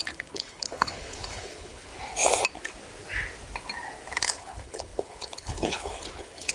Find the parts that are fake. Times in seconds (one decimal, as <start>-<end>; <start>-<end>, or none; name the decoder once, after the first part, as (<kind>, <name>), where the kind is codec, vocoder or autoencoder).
0.0-1.9 (codec, HILCodec); 4.2-6.5